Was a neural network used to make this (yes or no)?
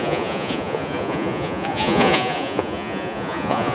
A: yes